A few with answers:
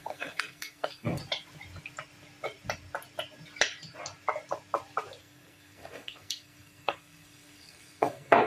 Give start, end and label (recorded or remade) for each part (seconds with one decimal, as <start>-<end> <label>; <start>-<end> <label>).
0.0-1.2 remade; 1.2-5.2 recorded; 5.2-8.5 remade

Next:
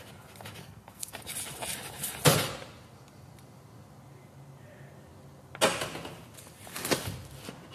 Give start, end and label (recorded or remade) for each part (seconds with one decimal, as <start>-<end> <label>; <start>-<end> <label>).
0.0-0.6 recorded; 0.6-1.2 remade; 1.2-7.7 recorded

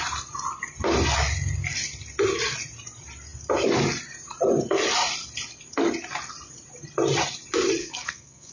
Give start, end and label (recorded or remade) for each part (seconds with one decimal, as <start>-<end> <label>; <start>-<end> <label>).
0.0-7.8 recorded; 7.8-8.5 remade

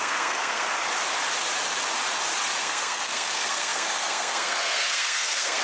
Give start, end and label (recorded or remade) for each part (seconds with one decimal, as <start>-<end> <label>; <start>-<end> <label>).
0.0-0.7 remade; 0.7-2.6 recorded; 2.6-5.6 remade